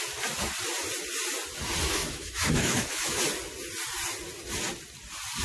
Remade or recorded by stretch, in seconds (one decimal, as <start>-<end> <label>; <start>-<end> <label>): 0.0-1.8 recorded; 1.8-3.2 remade; 3.2-5.4 recorded